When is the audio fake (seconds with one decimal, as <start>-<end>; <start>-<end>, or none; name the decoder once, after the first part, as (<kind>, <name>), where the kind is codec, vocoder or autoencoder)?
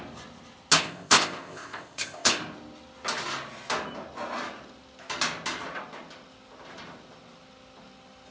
0.8-2.4 (codec, ZipCodec)